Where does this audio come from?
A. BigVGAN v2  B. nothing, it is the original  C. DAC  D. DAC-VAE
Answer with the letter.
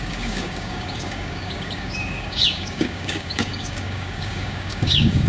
C